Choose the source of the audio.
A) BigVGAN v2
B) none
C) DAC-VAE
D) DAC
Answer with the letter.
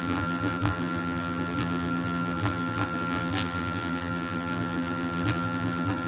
A